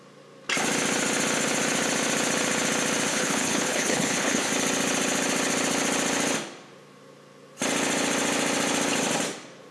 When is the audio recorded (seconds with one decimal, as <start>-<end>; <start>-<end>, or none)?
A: 0.0-3.1; 4.5-9.7

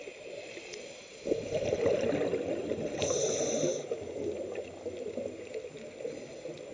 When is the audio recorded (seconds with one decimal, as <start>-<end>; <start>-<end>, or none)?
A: 0.0-6.7